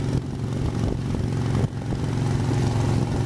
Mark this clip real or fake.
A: real